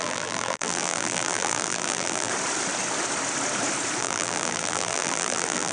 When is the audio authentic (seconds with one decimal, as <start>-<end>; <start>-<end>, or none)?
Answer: 2.3-4.0